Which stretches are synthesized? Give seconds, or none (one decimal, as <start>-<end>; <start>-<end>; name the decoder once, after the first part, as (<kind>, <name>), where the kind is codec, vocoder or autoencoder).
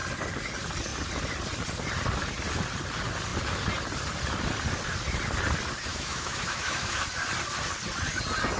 5.9-7.0 (autoencoder, DAC-VAE)